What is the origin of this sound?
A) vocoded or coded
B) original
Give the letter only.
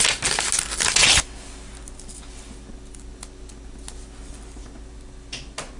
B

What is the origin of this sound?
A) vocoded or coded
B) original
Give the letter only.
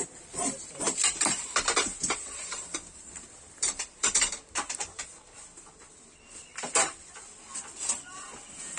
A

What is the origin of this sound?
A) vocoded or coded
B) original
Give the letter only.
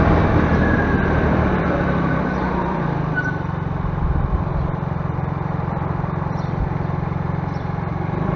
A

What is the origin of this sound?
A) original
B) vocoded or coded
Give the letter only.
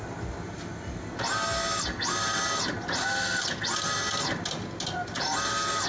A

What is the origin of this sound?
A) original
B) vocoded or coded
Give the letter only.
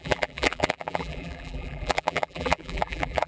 B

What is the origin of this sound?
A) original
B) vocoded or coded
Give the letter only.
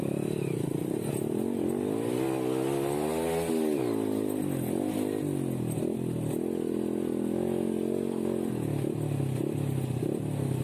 A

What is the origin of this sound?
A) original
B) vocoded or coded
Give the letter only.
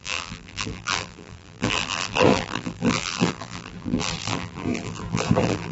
B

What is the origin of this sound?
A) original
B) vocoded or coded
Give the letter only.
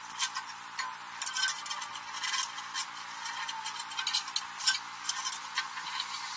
A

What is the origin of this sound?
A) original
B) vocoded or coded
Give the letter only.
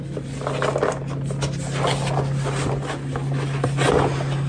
A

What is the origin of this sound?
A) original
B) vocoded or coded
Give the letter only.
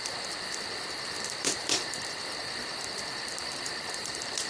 B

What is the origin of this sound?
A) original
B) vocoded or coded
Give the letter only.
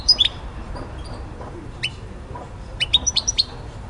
B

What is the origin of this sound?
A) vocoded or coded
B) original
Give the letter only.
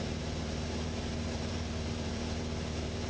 A